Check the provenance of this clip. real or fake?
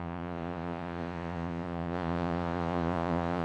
fake